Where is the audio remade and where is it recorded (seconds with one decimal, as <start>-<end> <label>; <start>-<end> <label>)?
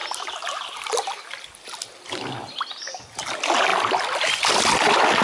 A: 0.0-1.3 remade; 1.3-5.2 recorded